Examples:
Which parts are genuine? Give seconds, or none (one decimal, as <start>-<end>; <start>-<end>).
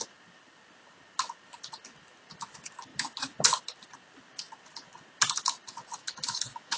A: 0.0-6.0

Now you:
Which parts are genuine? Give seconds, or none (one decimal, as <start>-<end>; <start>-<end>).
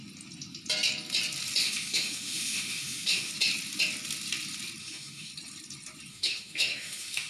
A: 0.0-1.6; 3.3-4.8; 5.3-6.1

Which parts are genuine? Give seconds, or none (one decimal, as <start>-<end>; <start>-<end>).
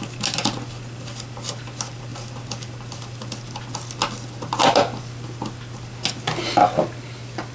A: 0.0-7.5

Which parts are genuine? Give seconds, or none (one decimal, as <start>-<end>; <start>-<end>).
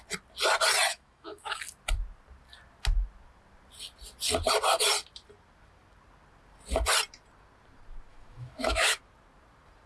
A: 0.0-0.9; 1.6-8.1; 9.0-9.9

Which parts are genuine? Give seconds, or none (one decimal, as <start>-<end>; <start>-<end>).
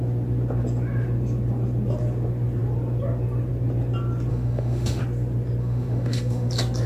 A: 0.0-4.3; 5.0-5.6; 6.5-6.9